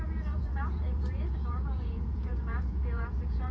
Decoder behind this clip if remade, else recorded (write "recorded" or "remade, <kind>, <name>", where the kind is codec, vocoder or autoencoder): remade, vocoder, Vocos